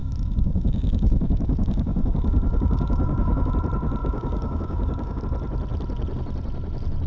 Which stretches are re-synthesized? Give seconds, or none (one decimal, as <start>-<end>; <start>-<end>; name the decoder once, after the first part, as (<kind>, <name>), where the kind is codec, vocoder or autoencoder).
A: 0.0-3.5 (codec, DAC); 4.0-5.2